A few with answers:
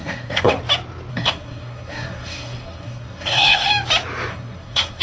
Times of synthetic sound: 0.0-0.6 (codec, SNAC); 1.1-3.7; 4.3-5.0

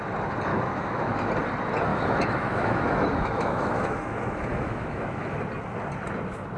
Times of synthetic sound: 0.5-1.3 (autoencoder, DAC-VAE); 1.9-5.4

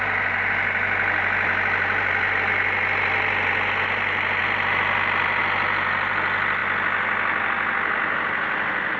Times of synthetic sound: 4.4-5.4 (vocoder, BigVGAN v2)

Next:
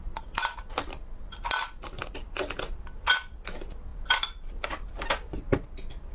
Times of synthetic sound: none